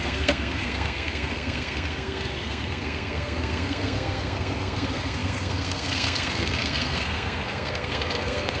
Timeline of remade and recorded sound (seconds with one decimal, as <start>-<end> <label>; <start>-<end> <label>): 0.0-8.6 remade

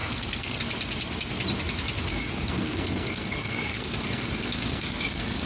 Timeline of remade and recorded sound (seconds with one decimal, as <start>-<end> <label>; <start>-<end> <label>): 0.0-0.6 remade; 0.6-2.1 recorded; 2.1-5.5 remade

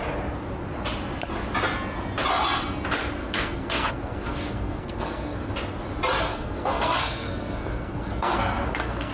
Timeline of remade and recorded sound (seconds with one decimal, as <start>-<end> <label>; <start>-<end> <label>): 0.0-3.2 recorded; 3.2-5.5 remade; 5.5-6.3 recorded; 6.3-9.1 remade

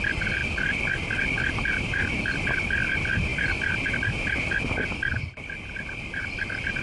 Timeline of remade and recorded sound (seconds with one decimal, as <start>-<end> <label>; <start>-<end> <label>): 0.0-6.8 recorded

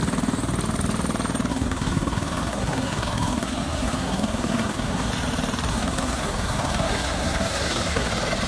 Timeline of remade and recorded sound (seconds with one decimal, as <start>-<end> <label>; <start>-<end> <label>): 0.0-1.5 recorded; 1.5-5.1 remade; 5.1-5.7 recorded; 5.7-8.1 remade; 8.1-8.5 recorded

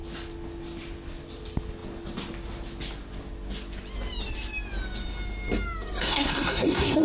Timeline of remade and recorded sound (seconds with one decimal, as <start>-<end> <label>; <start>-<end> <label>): 0.0-6.0 recorded; 6.0-7.0 remade

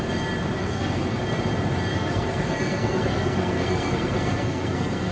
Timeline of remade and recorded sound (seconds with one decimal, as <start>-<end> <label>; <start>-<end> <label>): 0.0-0.6 recorded; 0.6-1.2 remade; 1.2-1.9 recorded; 1.9-5.1 remade